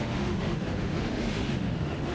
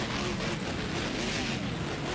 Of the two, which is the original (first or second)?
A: second